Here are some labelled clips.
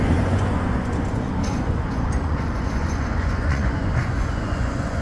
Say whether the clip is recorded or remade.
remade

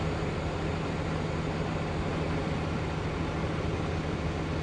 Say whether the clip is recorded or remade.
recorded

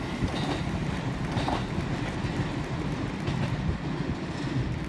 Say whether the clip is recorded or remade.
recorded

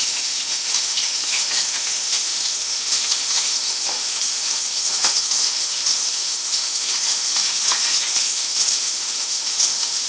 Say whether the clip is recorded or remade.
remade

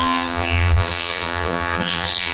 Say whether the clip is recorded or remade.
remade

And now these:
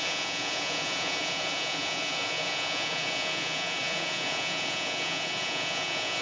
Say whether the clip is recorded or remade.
remade